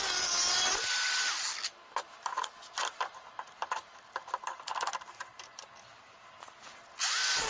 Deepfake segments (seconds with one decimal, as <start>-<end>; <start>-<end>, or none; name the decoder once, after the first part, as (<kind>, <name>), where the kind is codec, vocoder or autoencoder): none